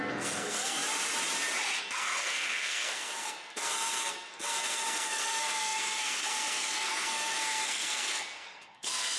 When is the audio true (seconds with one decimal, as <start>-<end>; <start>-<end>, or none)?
0.8-1.8